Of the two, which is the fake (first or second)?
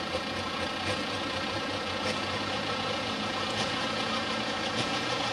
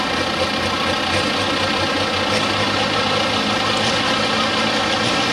first